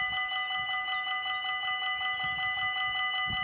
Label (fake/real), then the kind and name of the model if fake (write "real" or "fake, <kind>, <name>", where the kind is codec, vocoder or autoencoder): real